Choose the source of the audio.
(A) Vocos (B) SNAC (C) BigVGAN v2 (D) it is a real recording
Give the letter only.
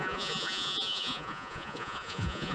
A